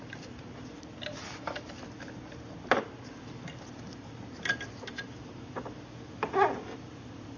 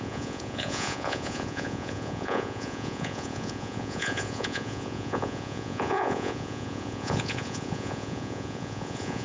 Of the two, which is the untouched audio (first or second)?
first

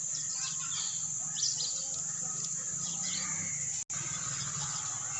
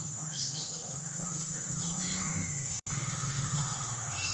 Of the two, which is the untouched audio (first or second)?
first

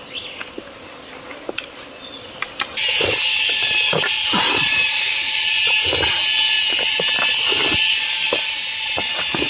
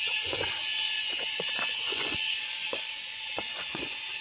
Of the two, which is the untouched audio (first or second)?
first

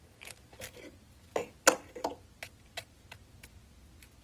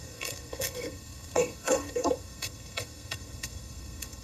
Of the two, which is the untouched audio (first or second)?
first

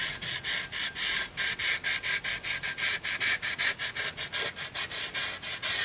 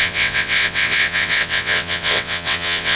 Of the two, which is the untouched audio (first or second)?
first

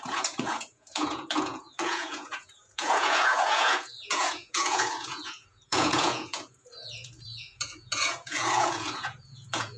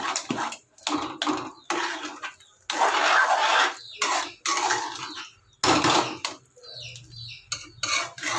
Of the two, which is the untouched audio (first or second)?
second